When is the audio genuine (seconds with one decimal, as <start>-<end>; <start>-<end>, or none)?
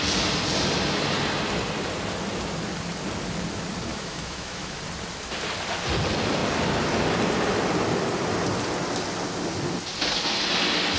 0.0-3.9; 4.8-11.0